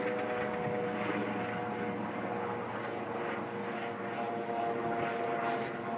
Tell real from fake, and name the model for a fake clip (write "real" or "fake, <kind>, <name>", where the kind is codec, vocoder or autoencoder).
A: real